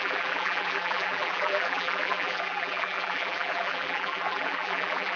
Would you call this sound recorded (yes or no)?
no